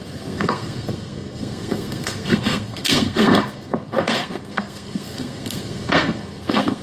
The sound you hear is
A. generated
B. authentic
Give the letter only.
A